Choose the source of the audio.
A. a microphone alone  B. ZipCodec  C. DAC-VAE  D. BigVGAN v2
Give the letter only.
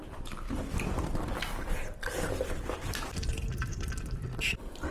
D